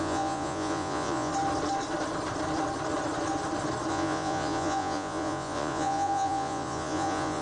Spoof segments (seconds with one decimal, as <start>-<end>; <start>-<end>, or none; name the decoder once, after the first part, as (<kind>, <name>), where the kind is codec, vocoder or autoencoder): 0.0-1.3 (vocoder, Vocos); 3.9-7.4